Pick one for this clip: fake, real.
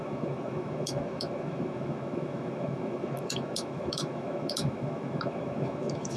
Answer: fake